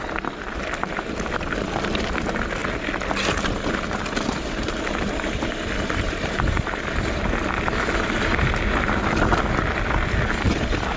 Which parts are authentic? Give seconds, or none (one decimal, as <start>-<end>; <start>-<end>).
0.0-11.0